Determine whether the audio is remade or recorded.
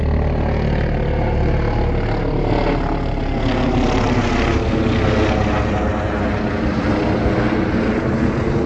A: recorded